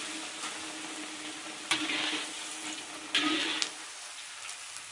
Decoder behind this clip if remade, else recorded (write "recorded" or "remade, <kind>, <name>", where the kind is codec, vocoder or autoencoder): recorded